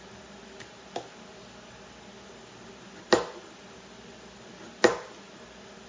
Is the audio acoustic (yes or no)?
yes